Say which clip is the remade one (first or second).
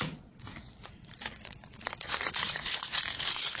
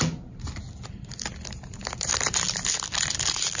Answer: first